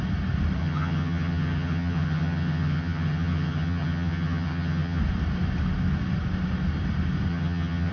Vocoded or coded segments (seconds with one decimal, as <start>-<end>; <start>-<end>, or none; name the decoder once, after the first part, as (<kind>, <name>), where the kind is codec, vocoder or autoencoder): 0.6-5.0 (vocoder, HiFi-GAN); 7.3-7.9